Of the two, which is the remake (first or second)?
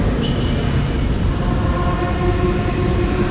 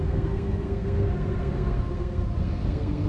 second